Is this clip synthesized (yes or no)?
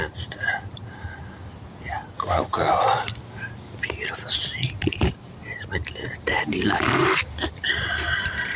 yes